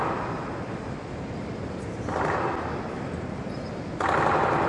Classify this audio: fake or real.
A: real